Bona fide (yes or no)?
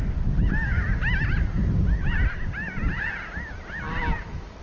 yes